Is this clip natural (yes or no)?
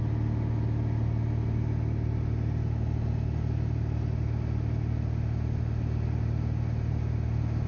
yes